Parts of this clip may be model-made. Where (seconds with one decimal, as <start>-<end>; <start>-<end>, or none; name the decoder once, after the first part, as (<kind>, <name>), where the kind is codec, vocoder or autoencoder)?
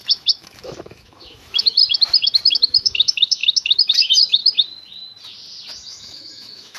0.0-1.8 (autoencoder, DAC-VAE); 2.5-4.4; 5.9-6.8